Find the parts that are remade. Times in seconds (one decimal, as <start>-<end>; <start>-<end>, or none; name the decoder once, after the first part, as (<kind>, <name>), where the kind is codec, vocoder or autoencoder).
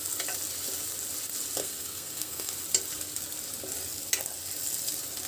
1.6-2.5 (codec, SNAC)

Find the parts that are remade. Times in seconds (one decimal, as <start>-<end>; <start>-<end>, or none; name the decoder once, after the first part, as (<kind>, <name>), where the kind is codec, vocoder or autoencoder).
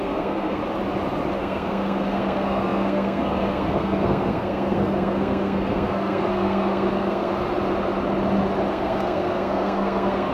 0.0-0.6 (codec, SNAC); 1.4-7.3; 8.7-10.3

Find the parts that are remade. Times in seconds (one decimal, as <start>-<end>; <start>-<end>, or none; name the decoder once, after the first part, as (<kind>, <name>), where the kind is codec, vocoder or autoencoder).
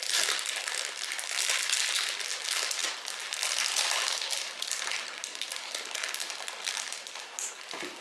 none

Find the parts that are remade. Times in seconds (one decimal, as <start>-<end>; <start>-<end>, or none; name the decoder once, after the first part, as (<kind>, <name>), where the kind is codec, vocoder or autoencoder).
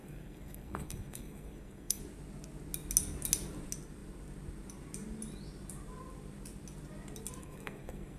0.0-2.0 (codec, SNAC); 7.4-8.2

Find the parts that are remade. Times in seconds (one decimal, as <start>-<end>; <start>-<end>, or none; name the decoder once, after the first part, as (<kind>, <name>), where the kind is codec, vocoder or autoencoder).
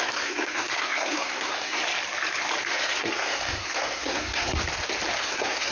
0.0-1.8 (codec, SNAC); 2.7-4.6; 5.2-5.7